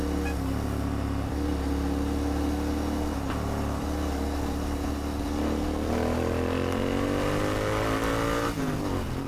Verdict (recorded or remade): recorded